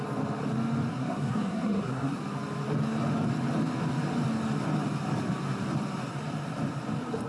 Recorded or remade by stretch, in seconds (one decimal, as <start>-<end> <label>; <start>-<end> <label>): 0.0-0.9 recorded; 0.9-2.2 remade; 2.2-7.3 recorded